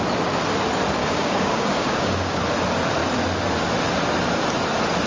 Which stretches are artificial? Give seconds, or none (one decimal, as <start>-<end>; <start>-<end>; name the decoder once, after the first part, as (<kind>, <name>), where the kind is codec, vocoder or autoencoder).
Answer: 1.0-2.4 (codec, DAC)